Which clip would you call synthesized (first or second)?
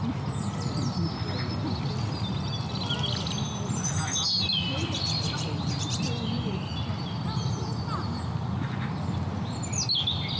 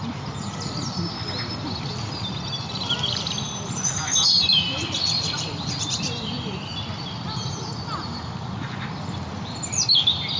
second